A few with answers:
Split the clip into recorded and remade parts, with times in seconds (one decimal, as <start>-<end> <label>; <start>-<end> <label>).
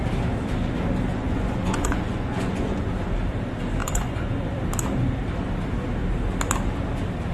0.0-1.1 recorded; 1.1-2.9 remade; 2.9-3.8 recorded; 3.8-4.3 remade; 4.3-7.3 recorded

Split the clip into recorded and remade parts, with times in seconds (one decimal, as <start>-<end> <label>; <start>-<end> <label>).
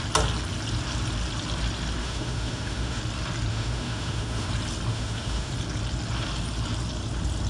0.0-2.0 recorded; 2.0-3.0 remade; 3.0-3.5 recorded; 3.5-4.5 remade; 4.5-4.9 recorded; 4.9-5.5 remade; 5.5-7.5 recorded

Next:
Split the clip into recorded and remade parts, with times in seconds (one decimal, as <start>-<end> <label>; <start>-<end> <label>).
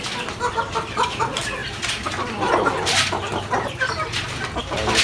0.0-5.0 recorded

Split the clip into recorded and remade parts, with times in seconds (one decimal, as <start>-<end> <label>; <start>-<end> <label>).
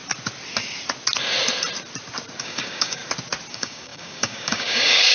0.0-2.4 recorded; 2.4-3.0 remade; 3.0-3.5 recorded; 3.5-5.1 remade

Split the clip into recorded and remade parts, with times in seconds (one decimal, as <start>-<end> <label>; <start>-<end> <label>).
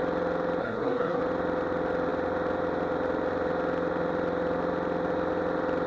0.0-0.6 recorded; 0.6-1.2 remade; 1.2-5.9 recorded